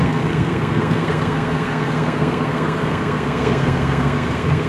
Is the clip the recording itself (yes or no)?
no